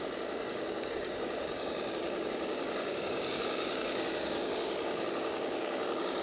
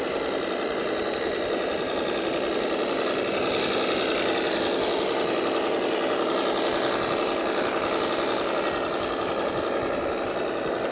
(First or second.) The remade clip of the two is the first